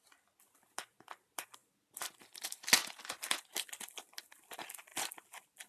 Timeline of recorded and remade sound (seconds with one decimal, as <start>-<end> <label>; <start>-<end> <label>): 0.0-5.7 recorded